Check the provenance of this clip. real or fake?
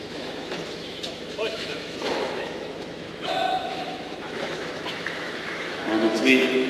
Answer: fake